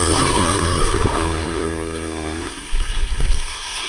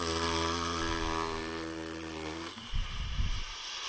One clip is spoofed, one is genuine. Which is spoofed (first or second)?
first